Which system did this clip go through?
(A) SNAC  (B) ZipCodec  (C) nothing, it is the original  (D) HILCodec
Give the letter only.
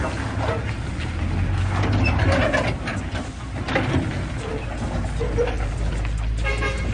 C